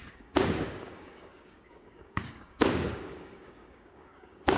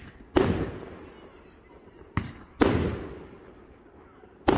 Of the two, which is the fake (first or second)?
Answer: first